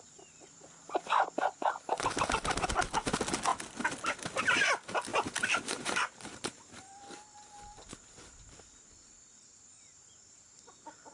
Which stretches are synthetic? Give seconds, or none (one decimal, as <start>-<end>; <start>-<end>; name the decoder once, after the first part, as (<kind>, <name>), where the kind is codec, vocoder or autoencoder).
5.1-7.0 (vocoder, BigVGAN v2)